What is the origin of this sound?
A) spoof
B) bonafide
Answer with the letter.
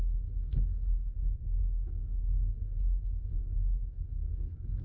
A